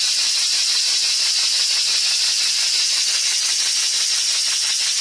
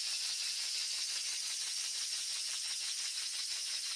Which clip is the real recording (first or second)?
first